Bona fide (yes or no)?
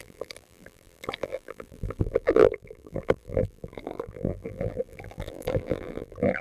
no